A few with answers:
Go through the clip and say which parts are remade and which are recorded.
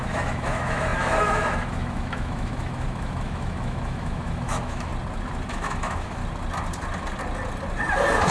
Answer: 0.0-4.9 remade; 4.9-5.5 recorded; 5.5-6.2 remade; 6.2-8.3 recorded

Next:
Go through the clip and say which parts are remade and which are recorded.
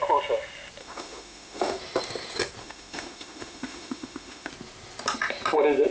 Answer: 0.0-0.8 recorded; 0.8-1.8 remade; 1.8-2.6 recorded; 2.6-4.5 remade; 4.5-5.9 recorded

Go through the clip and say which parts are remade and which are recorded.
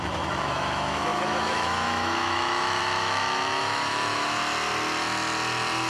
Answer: 0.0-4.4 remade; 4.4-5.9 recorded